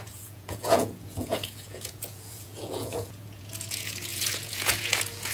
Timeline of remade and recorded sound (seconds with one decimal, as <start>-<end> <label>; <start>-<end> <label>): 0.0-5.3 remade